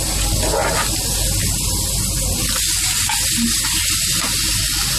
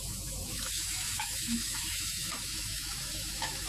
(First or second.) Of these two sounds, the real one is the first